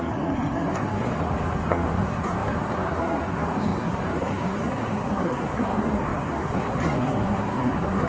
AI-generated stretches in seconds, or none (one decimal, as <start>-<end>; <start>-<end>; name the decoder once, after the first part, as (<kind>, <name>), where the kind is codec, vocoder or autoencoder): 0.0-8.1 (codec, SNAC)